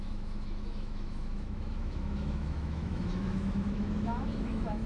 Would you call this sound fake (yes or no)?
yes